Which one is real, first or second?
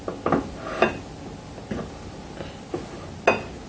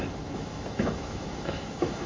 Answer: first